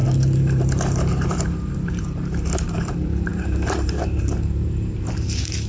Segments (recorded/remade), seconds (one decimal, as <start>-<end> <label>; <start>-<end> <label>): 0.0-5.7 remade